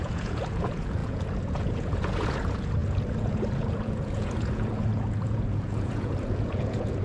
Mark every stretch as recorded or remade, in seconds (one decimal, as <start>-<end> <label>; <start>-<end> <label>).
0.0-7.0 remade